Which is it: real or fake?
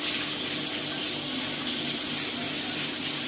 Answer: real